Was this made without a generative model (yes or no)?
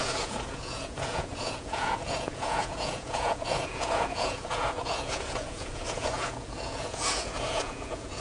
no